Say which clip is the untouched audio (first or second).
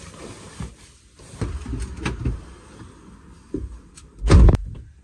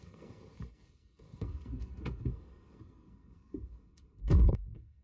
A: first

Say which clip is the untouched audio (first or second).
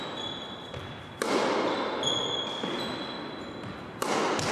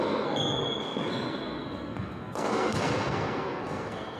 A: first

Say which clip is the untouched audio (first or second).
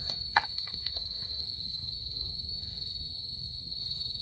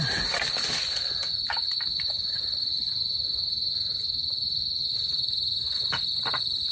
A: second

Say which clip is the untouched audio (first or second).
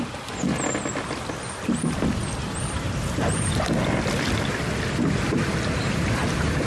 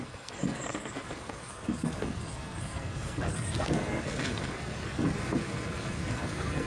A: first